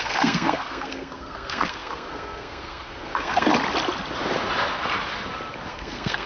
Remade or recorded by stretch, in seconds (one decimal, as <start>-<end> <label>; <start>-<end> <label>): 0.0-3.5 remade; 3.5-5.7 recorded; 5.7-6.3 remade

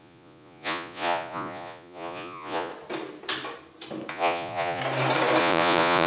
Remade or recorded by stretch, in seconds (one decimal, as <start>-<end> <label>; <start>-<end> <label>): 0.0-2.7 remade; 2.7-4.1 recorded; 4.1-4.8 remade; 4.8-5.4 recorded; 5.4-6.1 remade

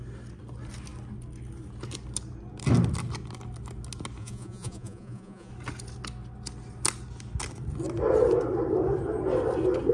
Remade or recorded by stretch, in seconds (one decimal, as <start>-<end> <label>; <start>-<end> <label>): 0.0-4.2 recorded; 4.2-5.5 remade; 5.5-9.9 recorded